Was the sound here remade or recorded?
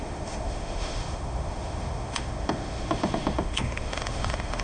remade